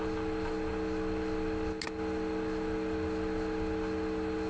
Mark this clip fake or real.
real